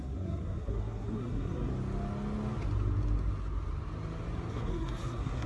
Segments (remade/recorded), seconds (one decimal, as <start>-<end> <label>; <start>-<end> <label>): 0.0-1.7 remade; 1.7-4.5 recorded; 4.5-5.5 remade